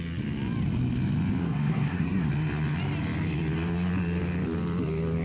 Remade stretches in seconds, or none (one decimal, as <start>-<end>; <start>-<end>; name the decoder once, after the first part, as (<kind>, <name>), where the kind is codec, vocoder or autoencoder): 1.4-2.3 (codec, SNAC)